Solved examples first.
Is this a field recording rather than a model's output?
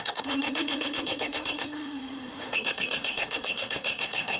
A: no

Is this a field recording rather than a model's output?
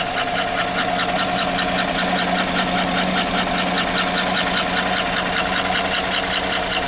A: yes